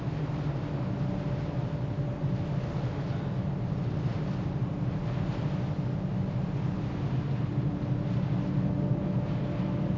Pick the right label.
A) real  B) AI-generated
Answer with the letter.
A